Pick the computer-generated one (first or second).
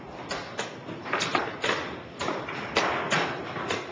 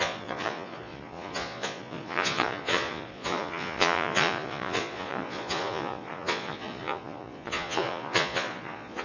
second